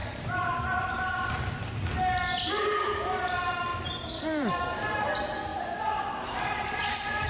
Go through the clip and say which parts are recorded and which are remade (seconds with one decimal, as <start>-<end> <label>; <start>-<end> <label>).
0.0-1.7 remade; 1.7-3.7 recorded; 3.7-4.5 remade; 4.5-5.5 recorded; 5.5-7.3 remade